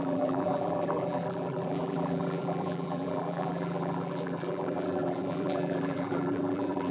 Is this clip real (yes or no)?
no